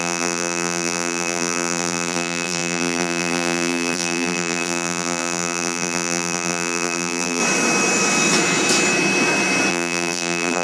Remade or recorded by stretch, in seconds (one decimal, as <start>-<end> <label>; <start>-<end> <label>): 0.0-7.4 remade; 7.4-9.7 recorded; 9.7-10.6 remade